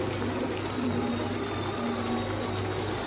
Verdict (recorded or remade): recorded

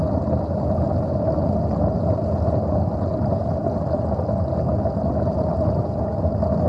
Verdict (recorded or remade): recorded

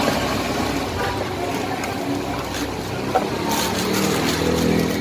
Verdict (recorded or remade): recorded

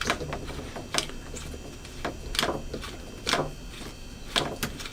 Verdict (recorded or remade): recorded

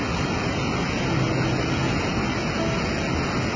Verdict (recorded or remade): recorded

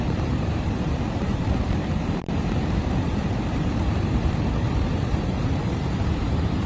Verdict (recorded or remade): remade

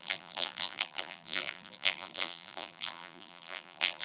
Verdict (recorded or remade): remade